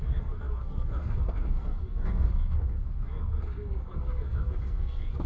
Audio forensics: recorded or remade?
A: remade